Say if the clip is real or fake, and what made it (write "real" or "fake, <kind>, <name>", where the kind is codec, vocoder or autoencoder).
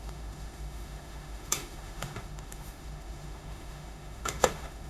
fake, autoencoder, DAC-VAE